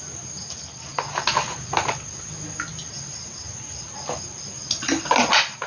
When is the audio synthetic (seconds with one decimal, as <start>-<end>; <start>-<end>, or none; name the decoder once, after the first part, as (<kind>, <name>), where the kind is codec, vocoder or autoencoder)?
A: none